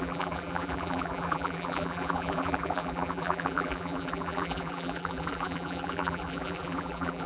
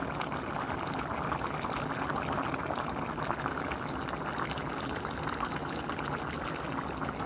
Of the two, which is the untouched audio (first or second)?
second